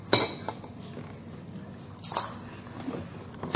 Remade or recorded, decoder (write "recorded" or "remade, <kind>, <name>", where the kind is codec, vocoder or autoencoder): recorded